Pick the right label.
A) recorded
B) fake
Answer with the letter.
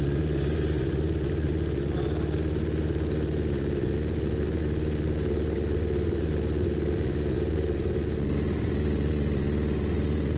B